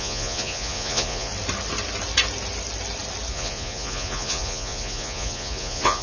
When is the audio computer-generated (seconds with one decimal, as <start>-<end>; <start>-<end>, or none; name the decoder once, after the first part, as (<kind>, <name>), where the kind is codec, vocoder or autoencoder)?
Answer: 0.0-1.3 (vocoder, Vocos); 3.3-6.0